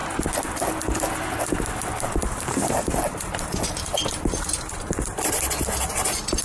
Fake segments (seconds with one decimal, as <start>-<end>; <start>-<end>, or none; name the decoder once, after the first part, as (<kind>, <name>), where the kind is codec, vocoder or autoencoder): none